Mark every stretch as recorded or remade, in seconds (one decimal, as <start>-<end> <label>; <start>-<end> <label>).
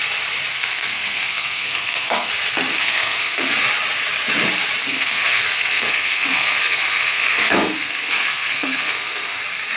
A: 0.0-0.5 recorded; 0.5-2.3 remade; 2.3-2.7 recorded; 2.7-3.5 remade; 3.5-4.8 recorded; 4.8-9.4 remade; 9.4-9.8 recorded